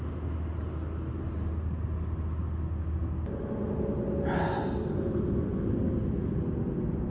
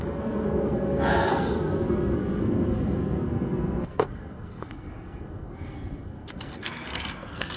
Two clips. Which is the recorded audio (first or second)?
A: first